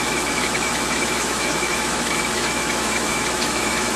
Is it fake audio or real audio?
fake